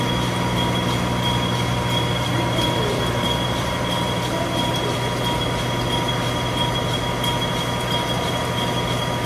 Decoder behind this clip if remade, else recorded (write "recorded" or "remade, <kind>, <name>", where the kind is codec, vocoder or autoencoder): recorded